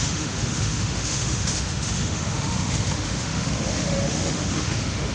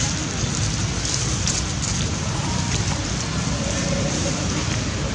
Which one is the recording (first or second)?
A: second